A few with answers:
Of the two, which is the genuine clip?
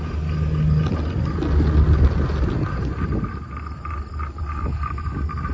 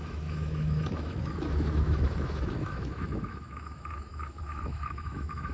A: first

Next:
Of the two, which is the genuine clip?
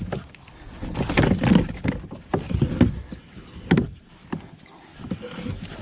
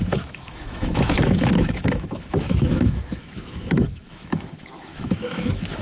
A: first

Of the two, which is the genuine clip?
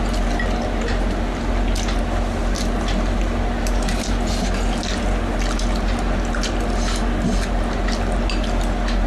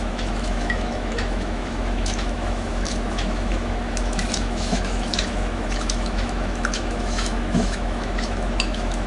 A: first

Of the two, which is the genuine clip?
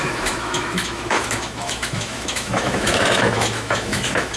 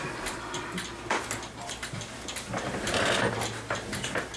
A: second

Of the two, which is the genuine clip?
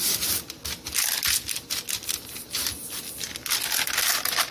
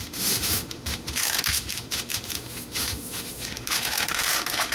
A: first